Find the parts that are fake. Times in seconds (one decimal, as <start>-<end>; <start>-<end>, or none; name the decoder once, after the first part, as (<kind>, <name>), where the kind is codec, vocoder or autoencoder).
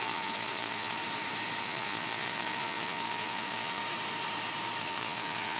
0.0-1.0 (vocoder, Vocos); 1.6-3.8; 4.8-5.6